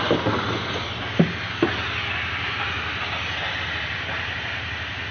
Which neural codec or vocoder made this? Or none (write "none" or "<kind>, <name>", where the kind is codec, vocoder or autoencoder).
none